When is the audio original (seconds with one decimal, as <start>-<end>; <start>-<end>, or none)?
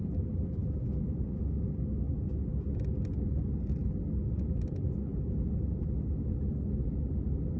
0.0-7.6